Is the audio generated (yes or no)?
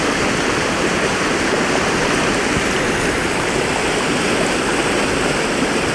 no